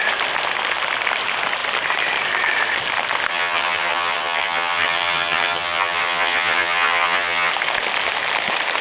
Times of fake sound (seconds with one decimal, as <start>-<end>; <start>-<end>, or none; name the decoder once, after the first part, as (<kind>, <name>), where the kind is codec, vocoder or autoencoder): 3.3-7.5 (vocoder, HiFi-GAN)